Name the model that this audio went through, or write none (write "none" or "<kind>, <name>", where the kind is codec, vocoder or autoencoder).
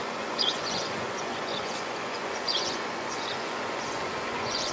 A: vocoder, Vocos